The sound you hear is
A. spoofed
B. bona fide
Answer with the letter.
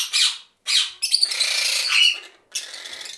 B